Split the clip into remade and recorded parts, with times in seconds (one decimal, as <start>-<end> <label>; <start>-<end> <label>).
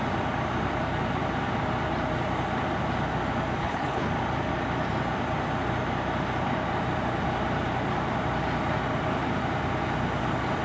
0.0-3.6 recorded; 3.6-4.1 remade; 4.1-10.6 recorded